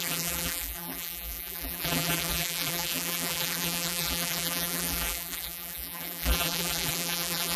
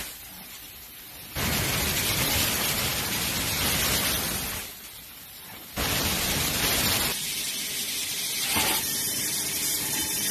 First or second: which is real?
second